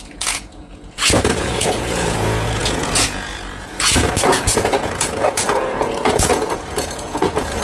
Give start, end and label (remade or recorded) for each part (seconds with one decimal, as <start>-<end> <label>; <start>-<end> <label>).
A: 0.0-7.6 remade